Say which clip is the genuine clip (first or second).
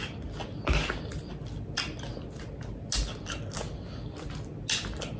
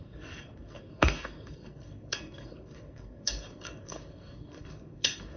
first